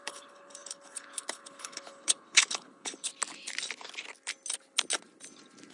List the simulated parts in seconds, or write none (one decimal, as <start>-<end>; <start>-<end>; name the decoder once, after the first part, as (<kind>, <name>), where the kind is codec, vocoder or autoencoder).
0.0-3.1 (codec, HILCodec)